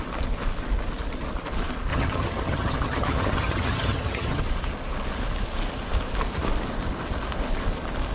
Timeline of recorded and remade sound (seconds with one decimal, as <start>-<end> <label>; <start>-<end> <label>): 0.0-1.9 recorded; 1.9-4.4 remade; 4.4-8.1 recorded